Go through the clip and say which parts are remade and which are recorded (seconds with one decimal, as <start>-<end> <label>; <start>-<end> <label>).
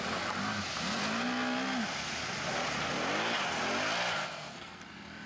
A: 0.0-4.2 recorded; 4.2-4.8 remade; 4.8-5.3 recorded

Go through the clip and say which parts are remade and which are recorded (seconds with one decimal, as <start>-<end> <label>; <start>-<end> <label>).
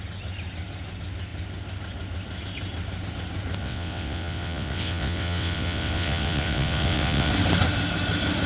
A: 0.0-3.6 recorded; 3.6-7.3 remade; 7.3-8.5 recorded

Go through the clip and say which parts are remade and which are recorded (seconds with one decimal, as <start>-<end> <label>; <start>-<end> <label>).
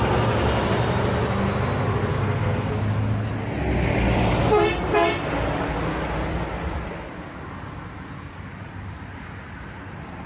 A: 0.0-2.1 recorded; 2.1-2.7 remade; 2.7-10.3 recorded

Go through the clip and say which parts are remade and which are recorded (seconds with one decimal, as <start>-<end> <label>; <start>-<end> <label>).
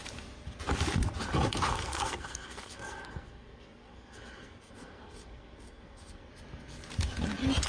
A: 0.0-1.7 recorded; 1.7-6.3 remade; 6.3-7.7 recorded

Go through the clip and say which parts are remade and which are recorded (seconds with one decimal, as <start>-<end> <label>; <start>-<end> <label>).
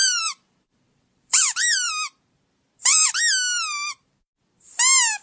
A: 0.0-1.9 remade; 1.9-3.7 recorded; 3.7-4.3 remade; 4.3-5.2 recorded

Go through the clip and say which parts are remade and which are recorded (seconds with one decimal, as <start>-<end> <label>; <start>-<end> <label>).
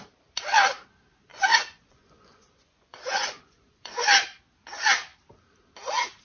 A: 0.0-1.3 recorded; 1.3-4.0 remade; 4.0-6.2 recorded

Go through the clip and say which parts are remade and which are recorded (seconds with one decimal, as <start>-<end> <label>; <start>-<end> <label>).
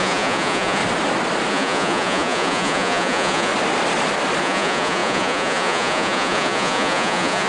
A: 0.0-0.8 remade; 0.8-1.5 recorded; 1.5-3.5 remade; 3.5-4.4 recorded; 4.4-7.5 remade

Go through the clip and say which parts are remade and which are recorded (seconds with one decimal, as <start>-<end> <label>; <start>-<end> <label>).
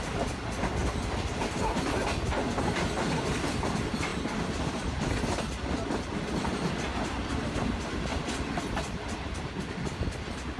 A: 0.0-0.8 recorded; 0.8-1.3 remade; 1.3-8.1 recorded; 8.1-8.6 remade; 8.6-10.6 recorded